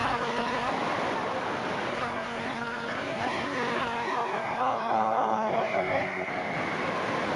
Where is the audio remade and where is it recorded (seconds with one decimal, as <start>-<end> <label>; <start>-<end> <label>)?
0.0-0.7 remade; 0.7-1.9 recorded; 1.9-6.3 remade; 6.3-7.4 recorded